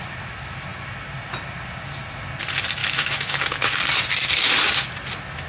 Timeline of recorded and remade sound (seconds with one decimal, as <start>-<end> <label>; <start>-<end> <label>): 0.0-2.8 recorded; 2.8-3.8 remade; 3.8-5.5 recorded